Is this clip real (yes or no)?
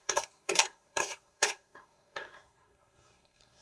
no